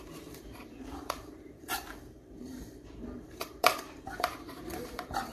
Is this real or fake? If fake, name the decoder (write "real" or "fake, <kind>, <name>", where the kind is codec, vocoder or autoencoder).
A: fake, vocoder, BigVGAN v2